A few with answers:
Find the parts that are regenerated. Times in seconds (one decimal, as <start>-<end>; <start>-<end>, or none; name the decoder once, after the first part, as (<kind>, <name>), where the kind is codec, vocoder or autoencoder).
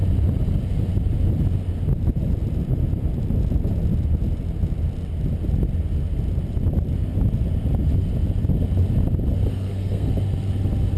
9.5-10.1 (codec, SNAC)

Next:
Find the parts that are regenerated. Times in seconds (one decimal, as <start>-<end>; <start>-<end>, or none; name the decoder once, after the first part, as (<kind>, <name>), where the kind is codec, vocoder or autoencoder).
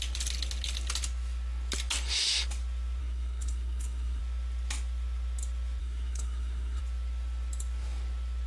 3.0-4.2 (codec, SNAC); 5.8-6.8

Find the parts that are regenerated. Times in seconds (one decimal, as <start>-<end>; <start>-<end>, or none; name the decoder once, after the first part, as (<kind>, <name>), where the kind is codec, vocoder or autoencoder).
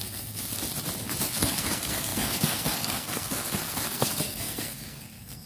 0.0-0.6 (codec, SNAC); 1.2-5.5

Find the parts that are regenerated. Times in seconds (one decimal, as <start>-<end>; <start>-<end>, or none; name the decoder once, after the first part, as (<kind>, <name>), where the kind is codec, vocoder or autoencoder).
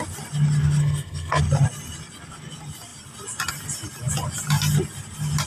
0.8-1.4 (codec, SNAC)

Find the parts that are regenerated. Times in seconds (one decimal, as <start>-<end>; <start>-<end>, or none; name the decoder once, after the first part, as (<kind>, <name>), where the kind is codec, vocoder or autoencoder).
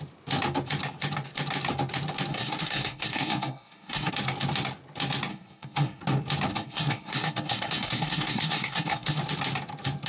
2.3-4.1 (codec, SNAC); 5.3-6.0; 6.5-9.2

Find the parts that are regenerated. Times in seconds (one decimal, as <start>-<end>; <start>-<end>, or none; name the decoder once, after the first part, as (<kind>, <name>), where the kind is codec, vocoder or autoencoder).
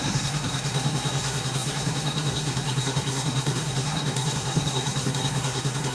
0.0-5.9 (codec, SNAC)